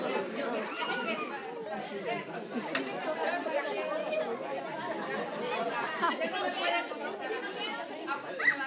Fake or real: real